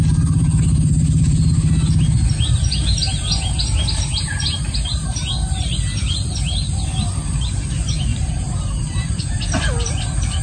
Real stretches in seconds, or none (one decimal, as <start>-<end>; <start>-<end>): 0.0-8.1; 9.2-10.4